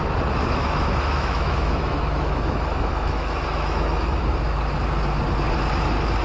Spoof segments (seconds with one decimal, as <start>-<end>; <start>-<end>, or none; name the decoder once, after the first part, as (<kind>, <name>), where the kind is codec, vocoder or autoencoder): 0.6-4.2 (autoencoder, DAC-VAE)